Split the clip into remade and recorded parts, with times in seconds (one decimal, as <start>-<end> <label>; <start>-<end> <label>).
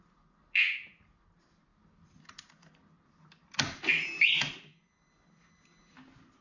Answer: 0.0-1.7 recorded; 1.7-5.5 remade; 5.5-6.4 recorded